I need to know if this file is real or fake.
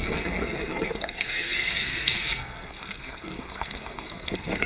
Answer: fake